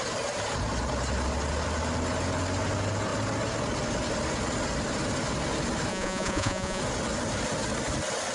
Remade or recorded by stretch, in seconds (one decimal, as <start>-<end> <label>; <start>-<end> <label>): 0.0-5.9 recorded; 5.9-6.8 remade; 6.8-8.3 recorded